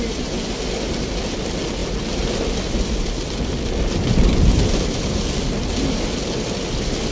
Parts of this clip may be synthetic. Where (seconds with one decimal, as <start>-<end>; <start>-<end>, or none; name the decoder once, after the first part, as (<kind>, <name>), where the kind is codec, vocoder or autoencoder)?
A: none